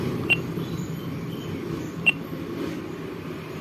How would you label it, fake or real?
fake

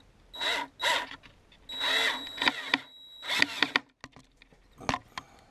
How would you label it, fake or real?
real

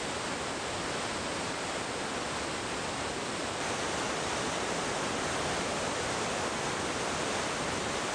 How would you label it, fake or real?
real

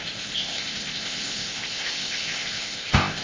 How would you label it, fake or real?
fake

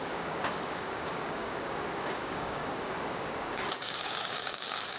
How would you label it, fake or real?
fake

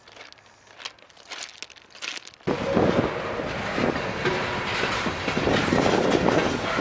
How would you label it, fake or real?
real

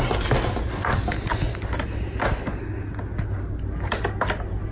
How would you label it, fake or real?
real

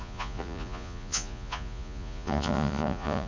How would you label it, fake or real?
fake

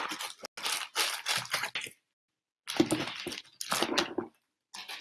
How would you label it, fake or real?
real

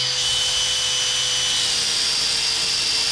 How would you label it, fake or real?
real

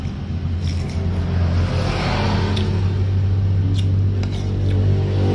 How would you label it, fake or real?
real